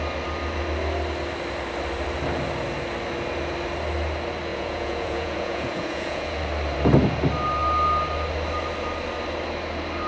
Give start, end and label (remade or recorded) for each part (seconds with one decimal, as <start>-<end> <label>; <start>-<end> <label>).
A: 0.0-4.5 recorded; 4.5-6.4 remade; 6.4-10.1 recorded